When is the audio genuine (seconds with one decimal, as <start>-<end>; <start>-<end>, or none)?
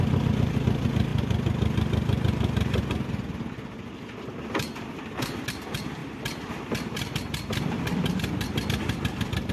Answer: 1.1-4.1